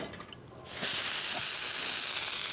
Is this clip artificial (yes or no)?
no